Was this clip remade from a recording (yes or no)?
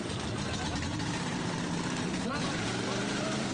yes